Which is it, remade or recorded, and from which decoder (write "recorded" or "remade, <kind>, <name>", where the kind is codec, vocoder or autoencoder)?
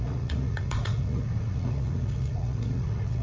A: remade, vocoder, Vocos